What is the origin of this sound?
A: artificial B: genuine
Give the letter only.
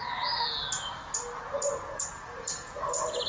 B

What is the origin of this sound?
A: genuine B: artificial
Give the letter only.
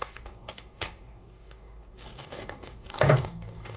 B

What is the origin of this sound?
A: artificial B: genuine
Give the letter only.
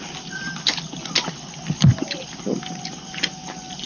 B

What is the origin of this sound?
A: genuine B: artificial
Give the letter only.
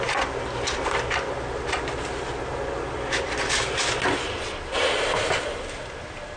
A